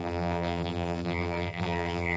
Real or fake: fake